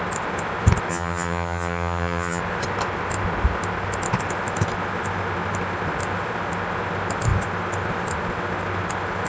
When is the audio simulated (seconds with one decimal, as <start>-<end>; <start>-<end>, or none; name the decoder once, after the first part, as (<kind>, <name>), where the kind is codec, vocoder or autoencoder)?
0.9-2.4 (vocoder, HiFi-GAN)